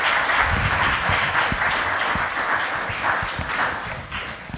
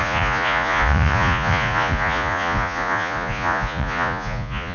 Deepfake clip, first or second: second